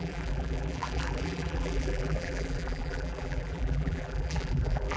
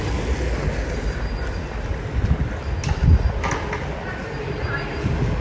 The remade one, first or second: first